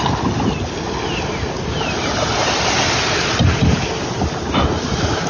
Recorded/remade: recorded